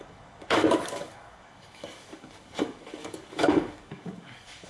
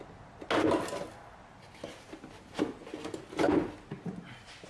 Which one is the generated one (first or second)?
first